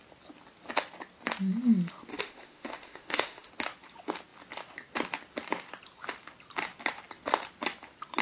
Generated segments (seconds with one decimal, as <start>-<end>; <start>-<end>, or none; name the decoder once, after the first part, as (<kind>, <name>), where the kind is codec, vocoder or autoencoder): 2.1-3.5 (autoencoder, DAC-VAE)